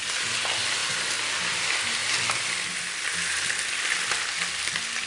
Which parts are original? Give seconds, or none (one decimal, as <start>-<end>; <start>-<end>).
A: 0.0-5.1